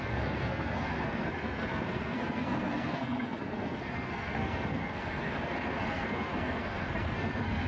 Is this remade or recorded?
remade